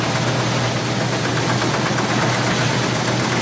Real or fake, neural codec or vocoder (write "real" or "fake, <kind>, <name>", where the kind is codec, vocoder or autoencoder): real